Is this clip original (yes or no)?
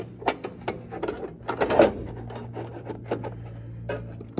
yes